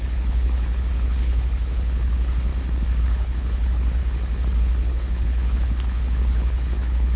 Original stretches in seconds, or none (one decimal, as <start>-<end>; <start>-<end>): 2.5-3.0; 4.0-4.6